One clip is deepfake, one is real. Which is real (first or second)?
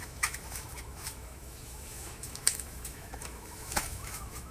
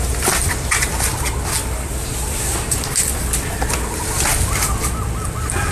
second